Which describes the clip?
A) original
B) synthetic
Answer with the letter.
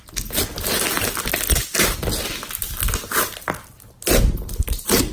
A